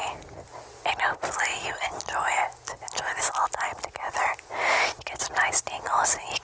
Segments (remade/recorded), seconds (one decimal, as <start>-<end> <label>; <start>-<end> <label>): 0.0-6.4 recorded